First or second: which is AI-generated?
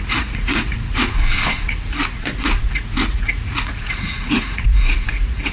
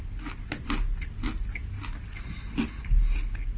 first